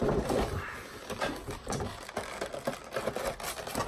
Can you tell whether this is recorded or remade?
recorded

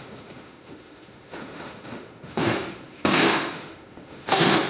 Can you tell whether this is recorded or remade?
remade